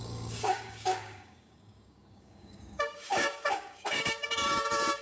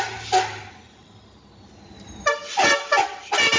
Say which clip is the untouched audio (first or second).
second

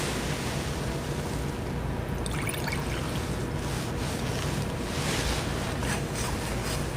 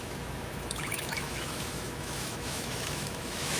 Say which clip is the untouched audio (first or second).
first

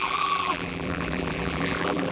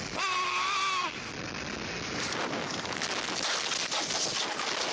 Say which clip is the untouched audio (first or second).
second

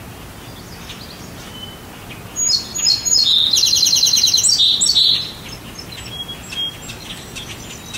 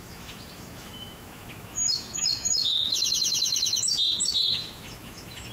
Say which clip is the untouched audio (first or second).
first